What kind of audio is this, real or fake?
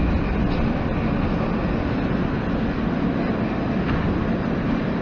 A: real